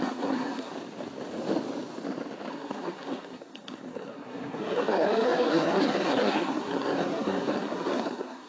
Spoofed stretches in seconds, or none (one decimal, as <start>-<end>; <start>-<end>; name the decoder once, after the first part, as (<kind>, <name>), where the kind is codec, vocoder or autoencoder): 0.0-0.7 (codec, SNAC); 2.5-8.5